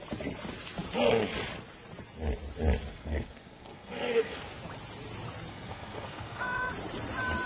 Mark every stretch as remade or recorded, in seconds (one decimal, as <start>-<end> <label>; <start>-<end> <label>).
0.0-2.9 recorded; 2.9-4.4 remade; 4.4-5.5 recorded; 5.5-6.7 remade; 6.7-7.5 recorded